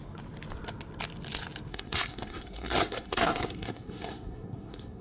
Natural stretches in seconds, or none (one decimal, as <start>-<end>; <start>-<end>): 0.0-1.7

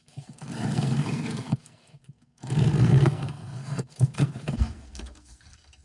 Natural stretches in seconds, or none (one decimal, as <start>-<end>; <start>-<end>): none